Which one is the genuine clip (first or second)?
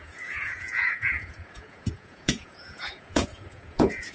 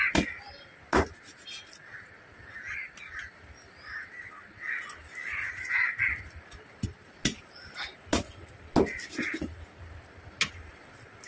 second